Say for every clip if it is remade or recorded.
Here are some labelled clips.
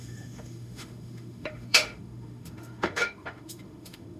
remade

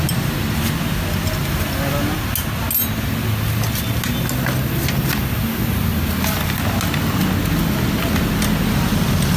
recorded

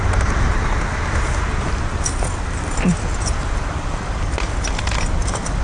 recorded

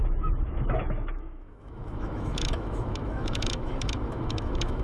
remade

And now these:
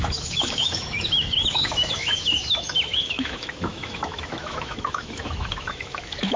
remade